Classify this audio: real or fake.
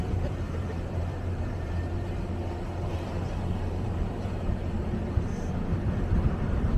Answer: fake